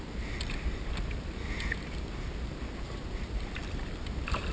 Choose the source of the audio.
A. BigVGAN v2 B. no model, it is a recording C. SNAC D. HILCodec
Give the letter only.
B